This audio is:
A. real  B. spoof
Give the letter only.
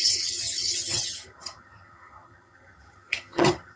B